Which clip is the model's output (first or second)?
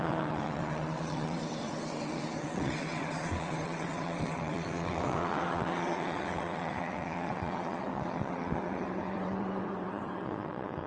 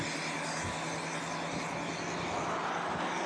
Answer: first